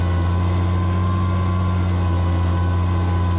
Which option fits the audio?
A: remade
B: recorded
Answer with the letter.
B